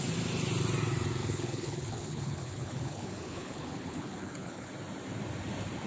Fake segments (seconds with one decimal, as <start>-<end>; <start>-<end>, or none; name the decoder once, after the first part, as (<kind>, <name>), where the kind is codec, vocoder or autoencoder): 1.2-4.7 (codec, HILCodec)